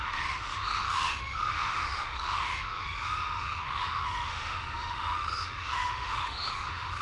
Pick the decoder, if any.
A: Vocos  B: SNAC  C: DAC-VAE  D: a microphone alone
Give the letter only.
C